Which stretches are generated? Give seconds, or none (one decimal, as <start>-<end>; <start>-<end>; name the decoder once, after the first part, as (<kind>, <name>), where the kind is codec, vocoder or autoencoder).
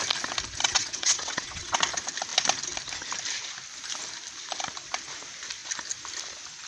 0.6-1.8 (vocoder, WaveNeXt)